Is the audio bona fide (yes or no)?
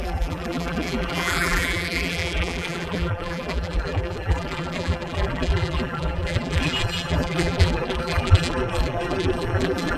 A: no